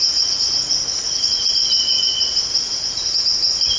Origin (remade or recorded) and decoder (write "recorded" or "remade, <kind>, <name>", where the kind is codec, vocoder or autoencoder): recorded